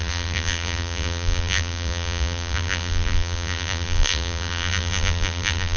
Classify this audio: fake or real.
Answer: fake